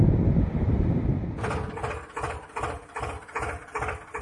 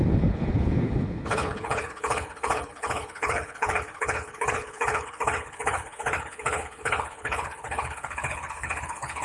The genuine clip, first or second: first